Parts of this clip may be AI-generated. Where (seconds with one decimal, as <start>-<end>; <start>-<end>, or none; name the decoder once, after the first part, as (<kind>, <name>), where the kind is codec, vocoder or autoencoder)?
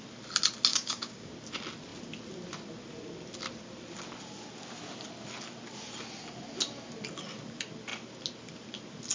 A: 0.7-1.3 (codec, DAC)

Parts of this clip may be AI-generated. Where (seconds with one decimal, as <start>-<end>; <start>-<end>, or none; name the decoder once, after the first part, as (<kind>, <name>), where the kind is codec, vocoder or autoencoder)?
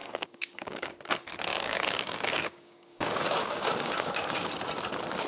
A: 0.0-1.0 (codec, DAC); 1.5-4.5